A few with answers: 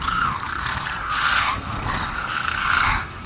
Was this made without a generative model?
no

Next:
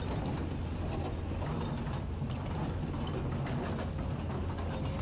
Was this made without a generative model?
yes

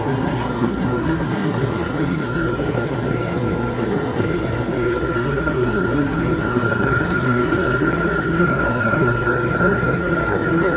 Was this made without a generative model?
no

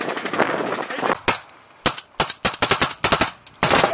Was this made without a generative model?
yes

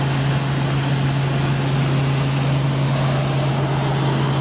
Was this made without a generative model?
yes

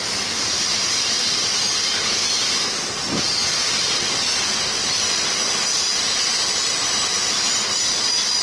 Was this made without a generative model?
yes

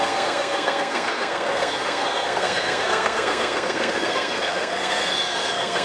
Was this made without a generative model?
no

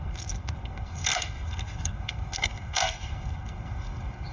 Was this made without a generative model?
no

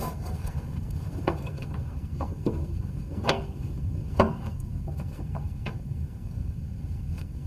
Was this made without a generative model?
no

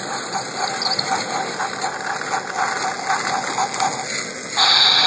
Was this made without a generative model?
yes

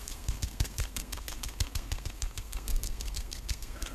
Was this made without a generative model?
no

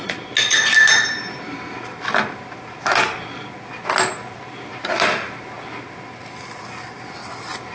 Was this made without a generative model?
yes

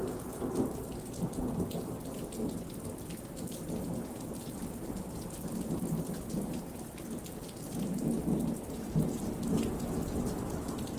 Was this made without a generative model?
yes